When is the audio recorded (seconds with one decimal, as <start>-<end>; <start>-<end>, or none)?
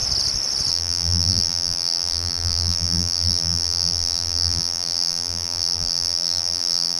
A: 0.0-0.7